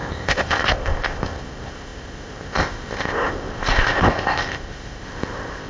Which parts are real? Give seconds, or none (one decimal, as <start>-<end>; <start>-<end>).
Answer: none